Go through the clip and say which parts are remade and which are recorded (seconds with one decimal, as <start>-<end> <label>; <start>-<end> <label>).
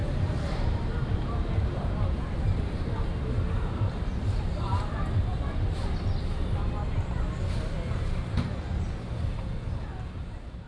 0.0-4.8 remade; 4.8-10.7 recorded